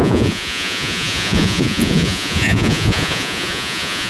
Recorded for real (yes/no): no